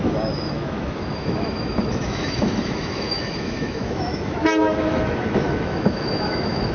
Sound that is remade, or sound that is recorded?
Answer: remade